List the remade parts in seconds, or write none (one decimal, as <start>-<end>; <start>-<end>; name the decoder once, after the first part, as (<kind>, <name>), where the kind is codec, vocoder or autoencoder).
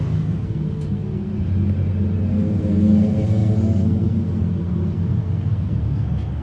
0.0-1.3 (codec, SNAC); 2.3-6.4